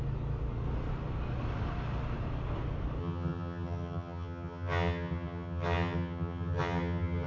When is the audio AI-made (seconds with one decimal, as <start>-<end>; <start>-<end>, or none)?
3.0-7.3